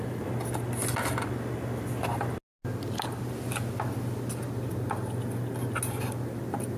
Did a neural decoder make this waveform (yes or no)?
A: no